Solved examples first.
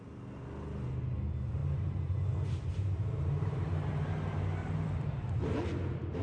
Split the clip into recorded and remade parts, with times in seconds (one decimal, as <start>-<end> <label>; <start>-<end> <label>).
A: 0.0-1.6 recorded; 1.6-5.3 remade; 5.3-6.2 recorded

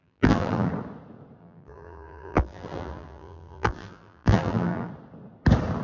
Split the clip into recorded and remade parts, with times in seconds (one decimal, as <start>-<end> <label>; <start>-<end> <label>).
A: 0.0-0.7 remade; 0.7-1.4 recorded; 1.4-4.9 remade; 4.9-5.8 recorded

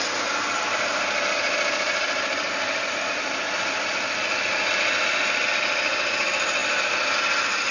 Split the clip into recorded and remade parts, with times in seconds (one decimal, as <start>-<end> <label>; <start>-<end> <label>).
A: 0.0-7.7 recorded

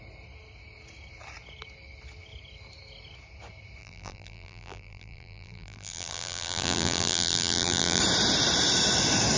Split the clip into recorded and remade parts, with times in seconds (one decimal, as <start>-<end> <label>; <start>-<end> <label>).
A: 0.0-3.8 recorded; 3.8-8.0 remade; 8.0-9.4 recorded